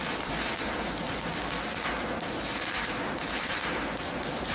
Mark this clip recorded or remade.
remade